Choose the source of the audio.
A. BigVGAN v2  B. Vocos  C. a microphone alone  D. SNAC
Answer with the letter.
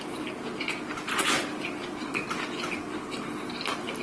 C